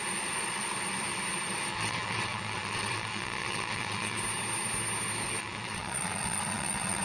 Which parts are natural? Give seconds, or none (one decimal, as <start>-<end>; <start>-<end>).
0.0-1.7; 4.2-5.4